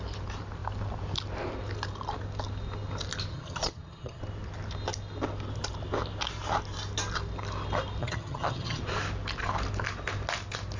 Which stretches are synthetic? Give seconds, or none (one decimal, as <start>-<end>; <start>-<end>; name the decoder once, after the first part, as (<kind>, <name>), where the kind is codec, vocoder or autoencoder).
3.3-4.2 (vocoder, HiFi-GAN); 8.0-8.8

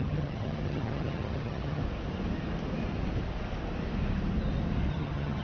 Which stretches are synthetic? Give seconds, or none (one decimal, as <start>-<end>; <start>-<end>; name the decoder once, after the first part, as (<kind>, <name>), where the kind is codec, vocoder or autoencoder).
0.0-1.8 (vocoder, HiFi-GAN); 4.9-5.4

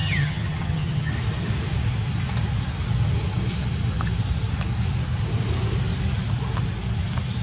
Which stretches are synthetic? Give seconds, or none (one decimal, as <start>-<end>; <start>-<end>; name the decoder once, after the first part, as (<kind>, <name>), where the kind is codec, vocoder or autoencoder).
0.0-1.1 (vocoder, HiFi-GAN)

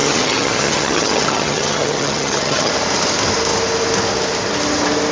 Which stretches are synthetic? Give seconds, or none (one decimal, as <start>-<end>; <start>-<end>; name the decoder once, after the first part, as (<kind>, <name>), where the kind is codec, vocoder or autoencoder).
0.0-2.7 (vocoder, HiFi-GAN)